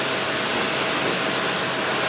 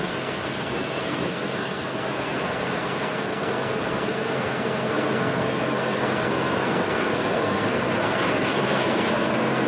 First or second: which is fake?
second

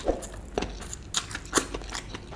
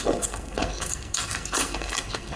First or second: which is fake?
second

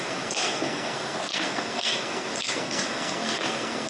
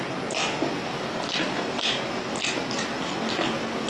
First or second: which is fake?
first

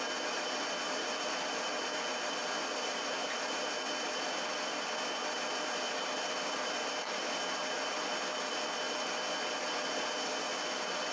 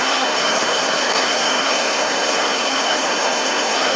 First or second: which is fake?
second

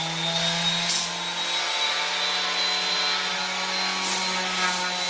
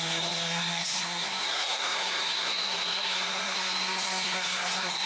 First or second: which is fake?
second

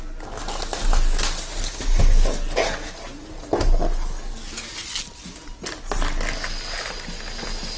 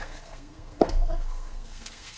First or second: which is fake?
second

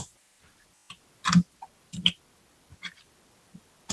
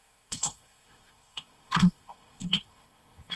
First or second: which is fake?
second